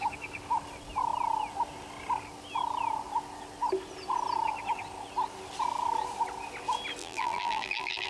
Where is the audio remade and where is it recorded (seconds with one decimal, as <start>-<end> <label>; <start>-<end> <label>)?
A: 0.0-7.0 recorded; 7.0-8.1 remade